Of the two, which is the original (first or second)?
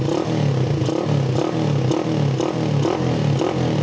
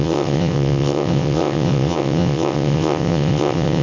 first